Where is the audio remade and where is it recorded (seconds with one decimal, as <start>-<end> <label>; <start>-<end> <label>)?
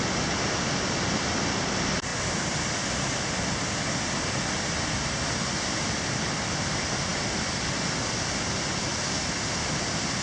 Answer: 0.0-10.2 recorded